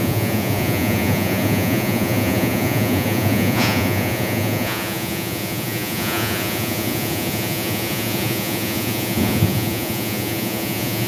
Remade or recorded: remade